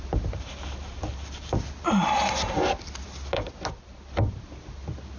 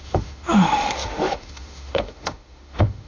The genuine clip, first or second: first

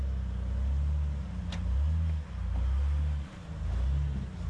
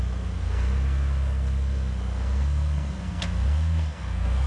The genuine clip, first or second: first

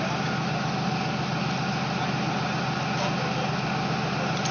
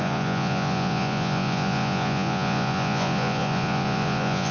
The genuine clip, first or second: first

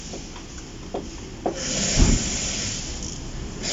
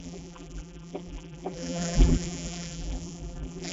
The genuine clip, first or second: first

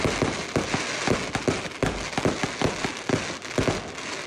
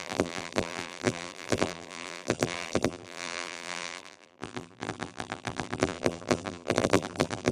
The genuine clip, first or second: first